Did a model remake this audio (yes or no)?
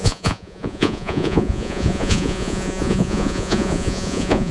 yes